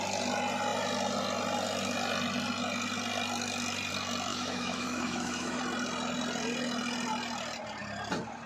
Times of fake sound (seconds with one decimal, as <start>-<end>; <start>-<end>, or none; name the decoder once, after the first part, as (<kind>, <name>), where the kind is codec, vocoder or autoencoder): 4.3-5.6 (autoencoder, DAC-VAE)

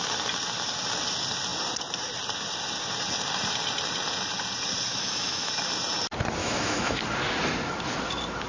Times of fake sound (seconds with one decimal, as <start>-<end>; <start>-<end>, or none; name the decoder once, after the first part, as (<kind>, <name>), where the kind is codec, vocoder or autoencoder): 4.9-5.5 (autoencoder, DAC-VAE); 6.4-7.0

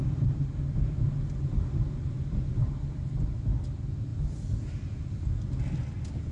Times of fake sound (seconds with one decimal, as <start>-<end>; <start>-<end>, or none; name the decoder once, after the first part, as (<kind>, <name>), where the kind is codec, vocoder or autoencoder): none

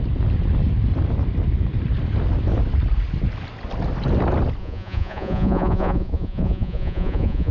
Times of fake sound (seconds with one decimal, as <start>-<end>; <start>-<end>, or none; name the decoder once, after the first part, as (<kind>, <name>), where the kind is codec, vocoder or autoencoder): 4.6-7.5 (vocoder, Vocos)

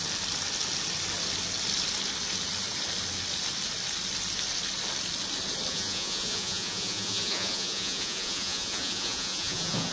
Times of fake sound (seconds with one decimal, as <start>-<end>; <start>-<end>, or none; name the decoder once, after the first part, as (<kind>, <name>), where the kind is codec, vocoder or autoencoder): 5.7-9.9 (vocoder, Vocos)